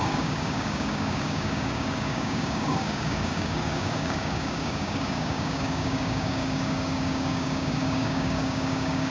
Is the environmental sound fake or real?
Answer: fake